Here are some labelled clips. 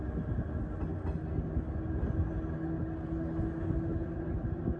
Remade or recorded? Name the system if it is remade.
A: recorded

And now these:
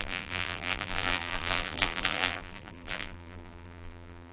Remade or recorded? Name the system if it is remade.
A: remade, vocoder, BigVGAN v2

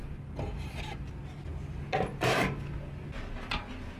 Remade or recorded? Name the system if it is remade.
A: recorded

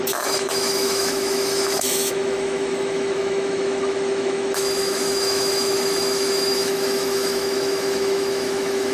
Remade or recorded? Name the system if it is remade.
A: remade, autoencoder, DAC-VAE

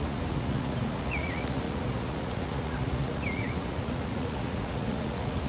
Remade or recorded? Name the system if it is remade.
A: remade, vocoder, Vocos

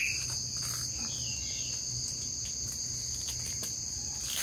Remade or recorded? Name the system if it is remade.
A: recorded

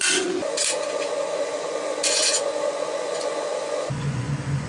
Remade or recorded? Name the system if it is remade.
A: remade, vocoder, Vocos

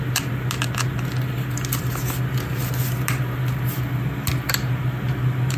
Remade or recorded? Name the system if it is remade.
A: recorded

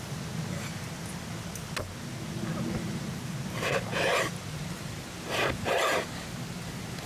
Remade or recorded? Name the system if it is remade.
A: recorded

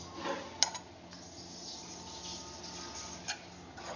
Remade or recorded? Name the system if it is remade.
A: recorded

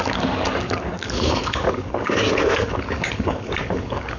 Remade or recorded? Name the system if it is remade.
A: remade, codec, DAC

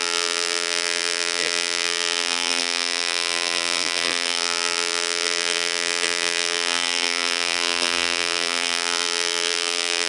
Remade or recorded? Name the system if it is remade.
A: remade, vocoder, BigVGAN v2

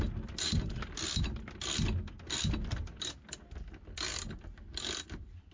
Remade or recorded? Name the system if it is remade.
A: recorded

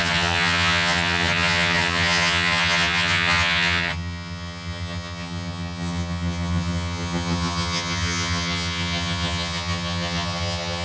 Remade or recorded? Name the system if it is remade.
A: remade, vocoder, HiFi-GAN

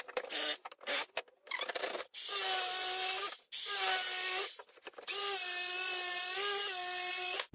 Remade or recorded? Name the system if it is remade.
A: recorded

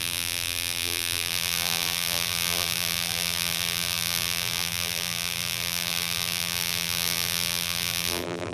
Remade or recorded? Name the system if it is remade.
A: remade, vocoder, BigVGAN v2